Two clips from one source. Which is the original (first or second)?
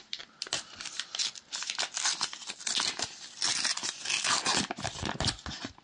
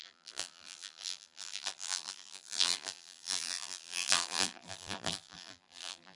first